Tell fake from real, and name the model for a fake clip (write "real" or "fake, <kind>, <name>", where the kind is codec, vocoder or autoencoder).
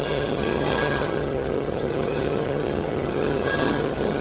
fake, vocoder, HiFi-GAN